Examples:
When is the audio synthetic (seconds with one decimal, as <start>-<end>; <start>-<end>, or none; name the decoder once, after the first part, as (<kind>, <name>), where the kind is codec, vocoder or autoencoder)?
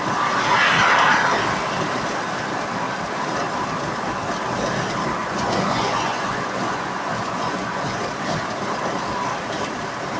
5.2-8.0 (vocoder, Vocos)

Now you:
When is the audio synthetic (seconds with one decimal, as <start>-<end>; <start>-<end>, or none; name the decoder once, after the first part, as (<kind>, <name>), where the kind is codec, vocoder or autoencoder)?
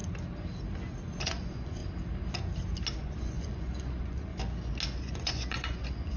1.2-1.8 (vocoder, Vocos); 3.0-4.3; 5.0-6.2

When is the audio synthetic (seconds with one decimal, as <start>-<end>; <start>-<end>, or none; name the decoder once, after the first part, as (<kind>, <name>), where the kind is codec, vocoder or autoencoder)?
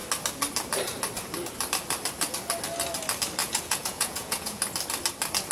3.4-4.6 (vocoder, Vocos)